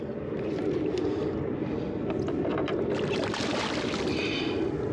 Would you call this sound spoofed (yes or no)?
no